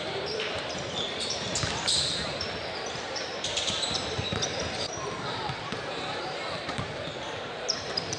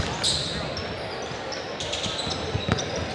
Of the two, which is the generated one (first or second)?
first